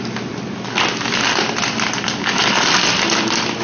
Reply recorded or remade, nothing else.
recorded